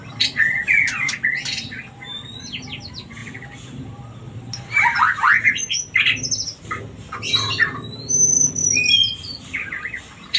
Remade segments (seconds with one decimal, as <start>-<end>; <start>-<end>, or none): 3.2-5.0; 8.6-10.4